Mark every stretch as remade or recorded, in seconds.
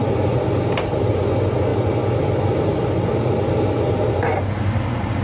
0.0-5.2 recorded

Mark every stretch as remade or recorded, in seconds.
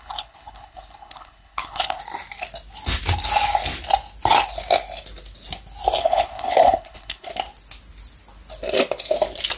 0.0-2.0 remade; 2.0-6.0 recorded; 6.0-7.3 remade; 7.3-9.6 recorded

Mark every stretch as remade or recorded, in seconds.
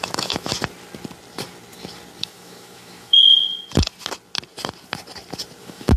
0.0-0.5 remade; 0.5-2.2 recorded; 2.2-3.2 remade; 3.2-5.6 recorded; 5.6-6.0 remade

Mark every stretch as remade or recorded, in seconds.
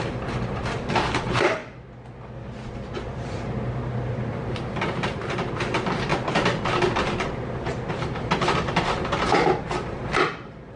0.0-1.6 remade; 1.6-4.3 recorded; 4.3-6.1 remade; 6.1-7.9 recorded; 7.9-10.8 remade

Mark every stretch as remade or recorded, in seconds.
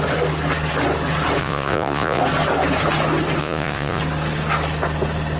0.0-1.4 recorded; 1.4-2.2 remade; 2.2-3.4 recorded; 3.4-4.0 remade; 4.0-5.4 recorded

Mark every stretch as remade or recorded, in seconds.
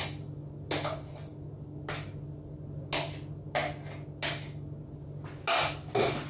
0.0-6.3 recorded